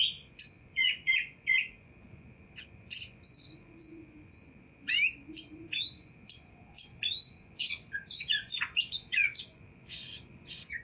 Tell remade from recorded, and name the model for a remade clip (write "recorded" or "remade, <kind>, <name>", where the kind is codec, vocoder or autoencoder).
remade, vocoder, Vocos